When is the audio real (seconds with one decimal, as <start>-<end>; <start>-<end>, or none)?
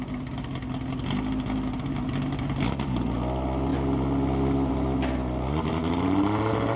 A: 0.0-6.8